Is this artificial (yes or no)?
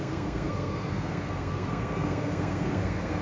yes